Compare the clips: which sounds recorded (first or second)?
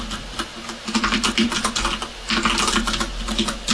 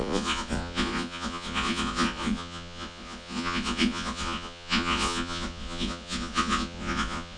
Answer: first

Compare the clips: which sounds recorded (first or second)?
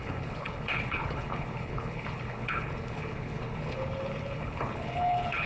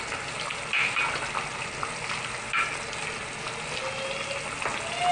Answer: second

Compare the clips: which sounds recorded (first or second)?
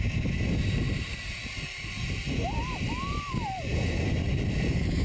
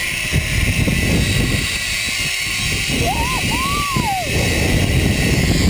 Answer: second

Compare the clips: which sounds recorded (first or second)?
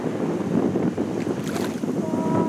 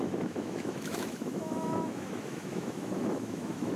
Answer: first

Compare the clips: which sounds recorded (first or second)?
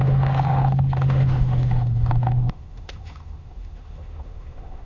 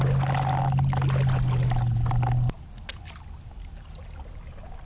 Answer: second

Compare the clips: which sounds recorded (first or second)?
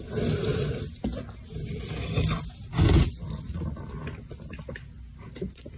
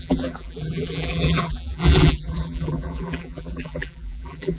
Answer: first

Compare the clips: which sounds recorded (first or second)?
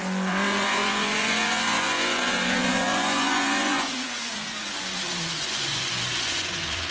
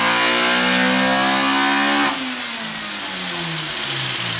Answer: second